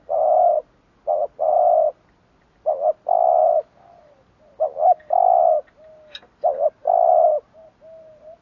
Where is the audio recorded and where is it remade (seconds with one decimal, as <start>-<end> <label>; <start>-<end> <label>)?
0.0-8.4 recorded